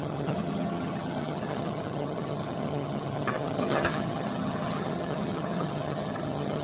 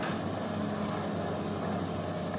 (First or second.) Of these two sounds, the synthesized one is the first